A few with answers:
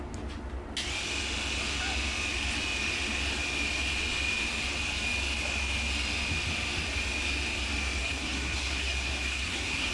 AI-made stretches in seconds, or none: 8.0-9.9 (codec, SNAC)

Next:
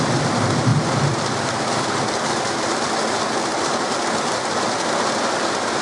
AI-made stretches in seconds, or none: none

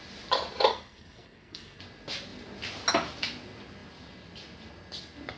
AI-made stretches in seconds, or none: 0.7-1.8 (codec, SNAC)

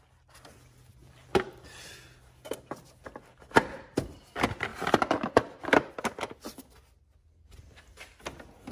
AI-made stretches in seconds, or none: 1.0-1.9 (vocoder, BigVGAN v2); 4.7-5.9

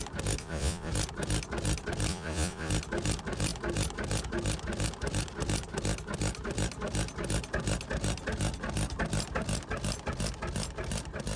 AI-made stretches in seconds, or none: 0.4-0.9 (vocoder, Vocos); 2.1-2.7

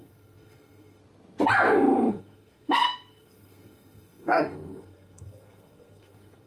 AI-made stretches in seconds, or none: 0.0-1.0 (codec, SNAC); 2.1-6.5

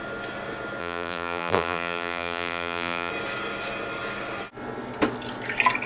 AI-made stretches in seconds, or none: 0.8-3.1 (vocoder, BigVGAN v2)

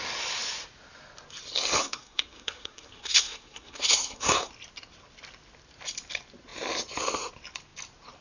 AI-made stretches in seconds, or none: 1.8-4.5 (codec, SNAC)